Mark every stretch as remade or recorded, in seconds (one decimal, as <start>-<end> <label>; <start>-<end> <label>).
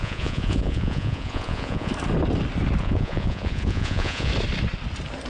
0.0-1.9 remade; 1.9-2.8 recorded; 2.8-4.3 remade; 4.3-5.3 recorded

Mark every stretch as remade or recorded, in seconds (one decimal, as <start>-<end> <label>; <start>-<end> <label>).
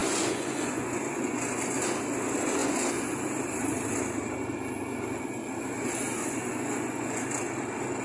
0.0-1.7 remade; 1.7-2.6 recorded; 2.6-3.1 remade; 3.1-6.2 recorded; 6.2-7.2 remade; 7.2-8.0 recorded